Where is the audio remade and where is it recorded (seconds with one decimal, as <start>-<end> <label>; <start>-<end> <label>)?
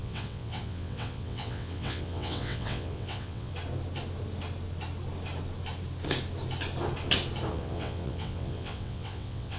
0.0-3.5 remade; 3.5-7.5 recorded; 7.5-9.6 remade